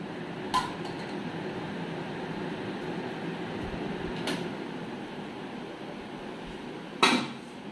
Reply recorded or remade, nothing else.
recorded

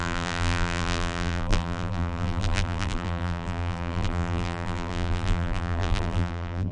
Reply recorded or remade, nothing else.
remade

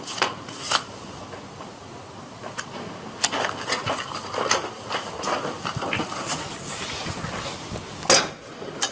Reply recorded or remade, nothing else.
recorded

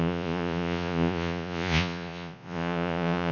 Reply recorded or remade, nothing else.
remade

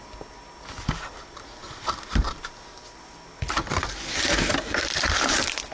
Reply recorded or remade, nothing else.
recorded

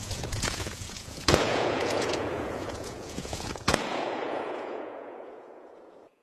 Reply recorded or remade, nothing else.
remade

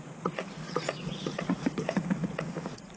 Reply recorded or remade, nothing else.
remade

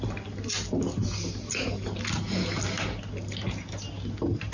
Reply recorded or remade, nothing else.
recorded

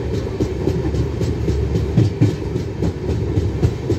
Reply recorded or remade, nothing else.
recorded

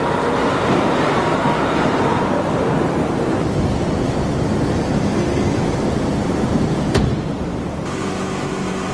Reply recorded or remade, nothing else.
recorded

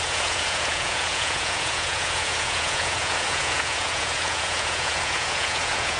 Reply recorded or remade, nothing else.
remade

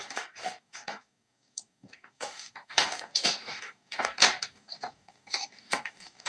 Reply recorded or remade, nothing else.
remade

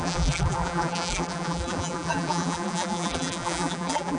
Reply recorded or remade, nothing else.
remade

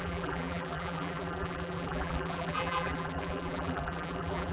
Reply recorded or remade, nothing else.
remade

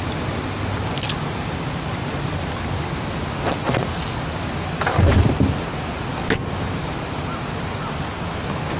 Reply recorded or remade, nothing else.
recorded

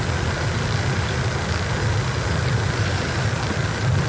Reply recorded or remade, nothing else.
recorded